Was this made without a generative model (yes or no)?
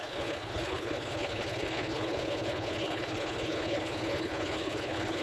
no